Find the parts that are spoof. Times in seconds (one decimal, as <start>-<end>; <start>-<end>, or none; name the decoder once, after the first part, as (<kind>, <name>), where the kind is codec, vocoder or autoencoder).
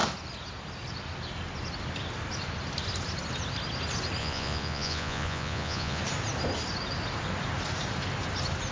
4.2-6.0 (vocoder, Vocos)